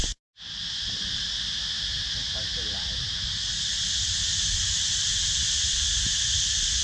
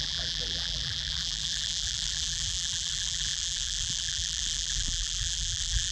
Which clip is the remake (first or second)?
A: second